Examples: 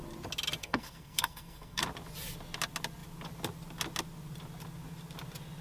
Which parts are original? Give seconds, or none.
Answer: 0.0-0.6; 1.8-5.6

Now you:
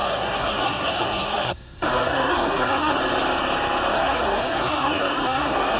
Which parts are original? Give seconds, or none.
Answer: 3.0-3.9

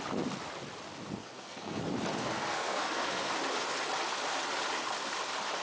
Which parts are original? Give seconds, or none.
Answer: 0.0-1.2; 1.8-2.2; 3.3-5.6

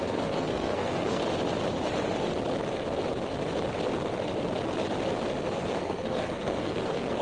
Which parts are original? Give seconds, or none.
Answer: 1.2-5.5

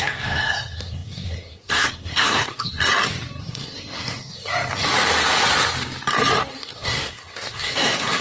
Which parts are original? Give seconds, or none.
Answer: 2.8-3.4; 4.5-6.5

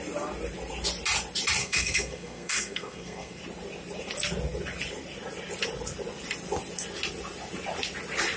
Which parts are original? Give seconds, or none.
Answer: 0.0-1.6; 3.4-8.4

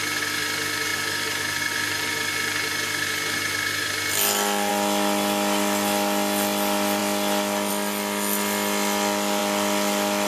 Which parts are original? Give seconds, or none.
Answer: 0.0-10.3